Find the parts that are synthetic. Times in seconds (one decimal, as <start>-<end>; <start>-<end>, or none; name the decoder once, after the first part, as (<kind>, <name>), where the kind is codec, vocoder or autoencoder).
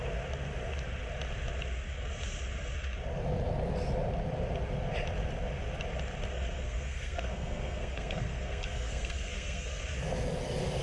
6.3-9.8 (codec, SNAC)